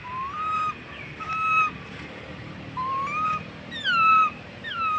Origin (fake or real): real